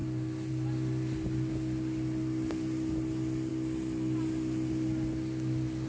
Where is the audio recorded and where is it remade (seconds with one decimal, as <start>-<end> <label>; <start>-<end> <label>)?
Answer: 0.0-5.9 recorded